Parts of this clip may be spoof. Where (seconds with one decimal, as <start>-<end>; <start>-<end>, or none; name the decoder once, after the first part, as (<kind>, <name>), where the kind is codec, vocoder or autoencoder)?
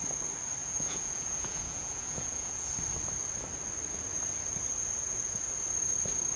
0.6-2.7 (vocoder, Vocos)